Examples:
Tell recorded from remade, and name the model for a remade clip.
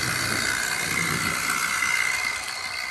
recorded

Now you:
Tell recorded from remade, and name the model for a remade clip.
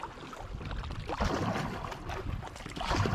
recorded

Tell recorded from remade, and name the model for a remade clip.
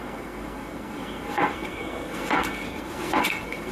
remade, codec, SNAC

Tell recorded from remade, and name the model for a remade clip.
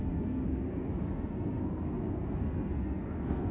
remade, codec, SNAC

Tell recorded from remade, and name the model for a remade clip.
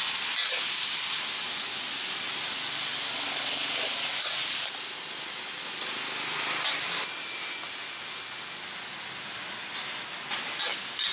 recorded